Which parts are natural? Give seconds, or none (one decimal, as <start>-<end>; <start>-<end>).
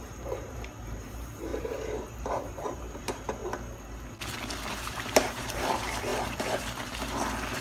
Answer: 3.4-4.7; 6.1-7.6